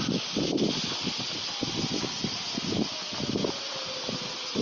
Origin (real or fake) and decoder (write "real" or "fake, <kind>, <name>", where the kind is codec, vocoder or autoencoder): real